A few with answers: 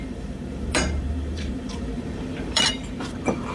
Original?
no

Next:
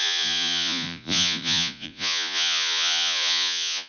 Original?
no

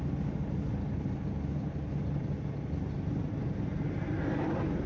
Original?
yes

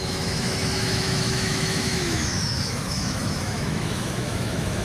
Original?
no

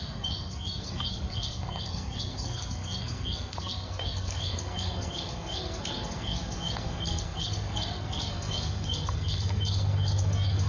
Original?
no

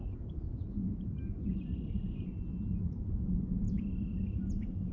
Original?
yes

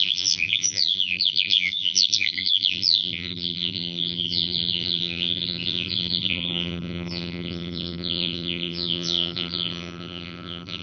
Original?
no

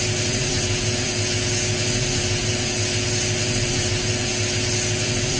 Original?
no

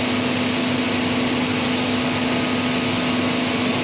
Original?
yes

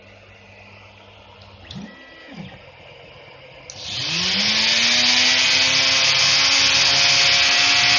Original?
yes